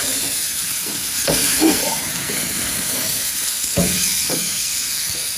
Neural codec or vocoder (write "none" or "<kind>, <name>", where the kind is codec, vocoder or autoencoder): codec, SNAC